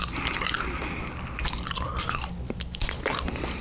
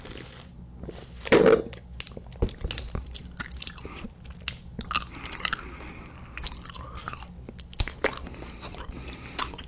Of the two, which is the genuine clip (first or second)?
second